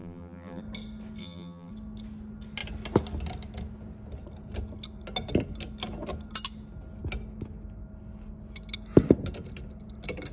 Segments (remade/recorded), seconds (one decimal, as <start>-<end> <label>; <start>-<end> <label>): 0.0-0.6 remade; 0.6-1.2 recorded; 1.2-1.7 remade; 1.7-10.3 recorded